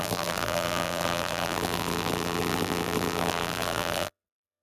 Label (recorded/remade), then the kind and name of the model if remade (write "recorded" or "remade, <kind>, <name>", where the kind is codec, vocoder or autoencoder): remade, vocoder, BigVGAN v2